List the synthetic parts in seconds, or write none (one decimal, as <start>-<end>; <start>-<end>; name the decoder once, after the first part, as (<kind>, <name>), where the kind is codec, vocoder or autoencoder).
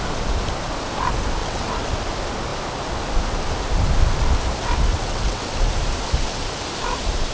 1.4-1.9 (vocoder, WaveNeXt); 4.9-5.7